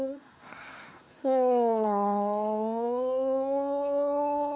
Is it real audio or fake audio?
fake